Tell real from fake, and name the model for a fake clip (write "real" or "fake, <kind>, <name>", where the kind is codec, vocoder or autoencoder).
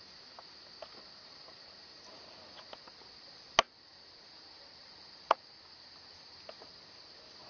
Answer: real